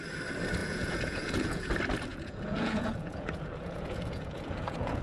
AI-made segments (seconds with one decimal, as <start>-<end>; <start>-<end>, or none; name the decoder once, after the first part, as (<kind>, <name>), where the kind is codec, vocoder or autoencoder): 0.6-1.7 (vocoder, Vocos); 2.1-5.0